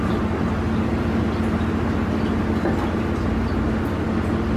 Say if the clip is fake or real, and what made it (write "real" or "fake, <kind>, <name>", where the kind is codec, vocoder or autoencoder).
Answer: real